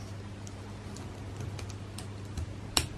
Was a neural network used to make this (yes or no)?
no